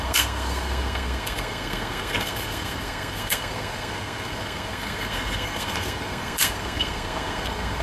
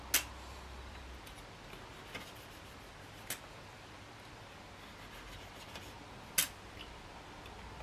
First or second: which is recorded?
second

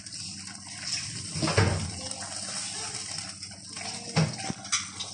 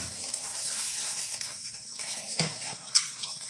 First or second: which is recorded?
first